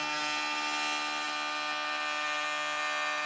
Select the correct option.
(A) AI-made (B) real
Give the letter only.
B